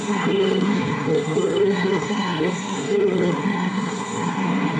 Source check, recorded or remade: remade